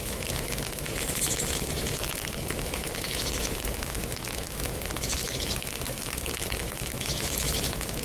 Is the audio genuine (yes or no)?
no